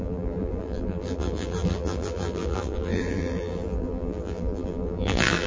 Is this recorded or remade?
remade